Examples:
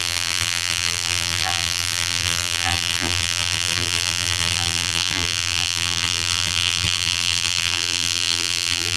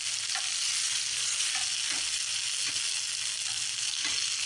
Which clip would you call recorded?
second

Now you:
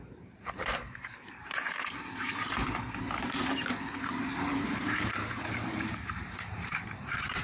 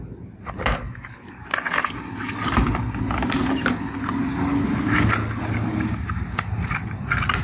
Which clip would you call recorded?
second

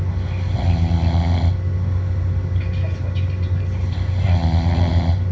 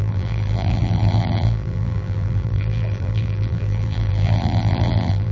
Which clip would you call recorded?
first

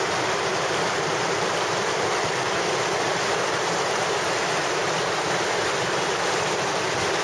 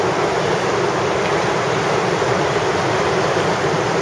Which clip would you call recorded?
second